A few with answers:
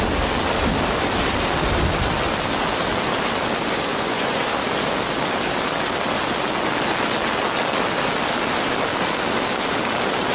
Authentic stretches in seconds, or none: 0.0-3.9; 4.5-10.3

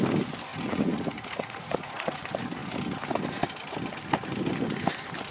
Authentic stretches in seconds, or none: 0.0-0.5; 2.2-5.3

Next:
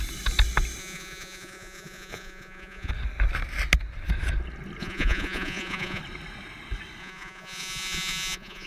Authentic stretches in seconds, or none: 0.0-0.8; 2.9-4.8; 6.0-7.0

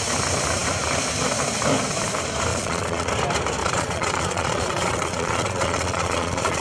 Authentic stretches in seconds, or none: 0.0-2.5; 3.1-3.6